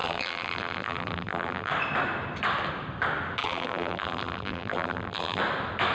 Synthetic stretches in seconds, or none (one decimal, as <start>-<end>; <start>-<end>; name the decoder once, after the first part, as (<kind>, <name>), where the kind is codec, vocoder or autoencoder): 0.0-1.7 (vocoder, BigVGAN v2); 3.4-5.4